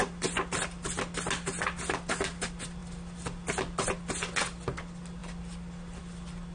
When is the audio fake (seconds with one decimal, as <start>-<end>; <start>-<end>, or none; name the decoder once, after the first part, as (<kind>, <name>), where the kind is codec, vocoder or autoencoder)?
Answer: none